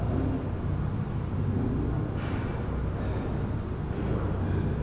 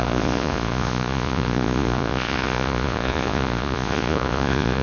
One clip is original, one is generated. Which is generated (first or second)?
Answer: second